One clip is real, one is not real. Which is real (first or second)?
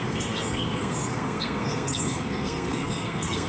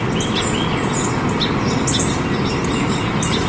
second